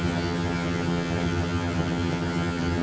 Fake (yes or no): yes